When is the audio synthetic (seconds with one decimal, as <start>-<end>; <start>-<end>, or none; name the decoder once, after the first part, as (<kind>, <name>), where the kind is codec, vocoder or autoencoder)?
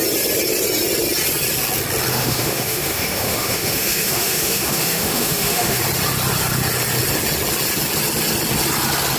2.1-5.8 (autoencoder, DAC-VAE)